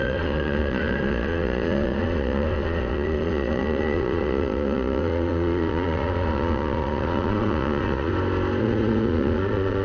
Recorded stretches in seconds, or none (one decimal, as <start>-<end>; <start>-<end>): 8.1-8.6